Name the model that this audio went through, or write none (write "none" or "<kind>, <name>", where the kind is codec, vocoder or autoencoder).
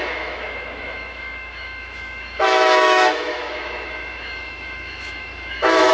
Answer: autoencoder, DAC-VAE